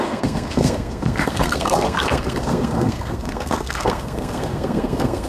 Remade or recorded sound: remade